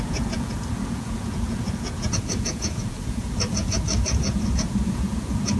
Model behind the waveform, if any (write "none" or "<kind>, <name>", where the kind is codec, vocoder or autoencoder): vocoder, Vocos